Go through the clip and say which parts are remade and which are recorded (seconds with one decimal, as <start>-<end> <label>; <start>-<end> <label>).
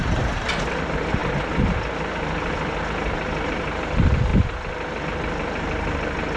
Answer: 0.0-0.6 remade; 0.6-6.4 recorded